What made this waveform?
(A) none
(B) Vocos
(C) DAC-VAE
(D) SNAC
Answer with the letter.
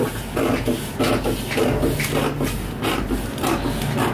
A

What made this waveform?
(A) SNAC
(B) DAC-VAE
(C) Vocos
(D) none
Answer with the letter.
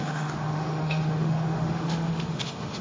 B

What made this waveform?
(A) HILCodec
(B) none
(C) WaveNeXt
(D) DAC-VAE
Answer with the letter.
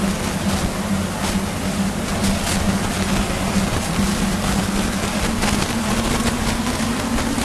B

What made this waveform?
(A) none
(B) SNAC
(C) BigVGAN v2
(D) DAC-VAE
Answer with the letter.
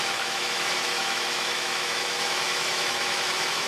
D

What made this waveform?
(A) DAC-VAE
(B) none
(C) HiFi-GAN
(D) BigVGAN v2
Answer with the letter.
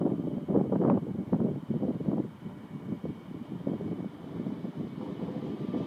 B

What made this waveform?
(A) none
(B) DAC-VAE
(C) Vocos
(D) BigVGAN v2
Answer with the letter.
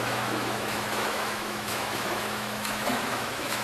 B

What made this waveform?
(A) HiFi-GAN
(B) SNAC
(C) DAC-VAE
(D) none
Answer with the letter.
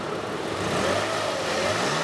D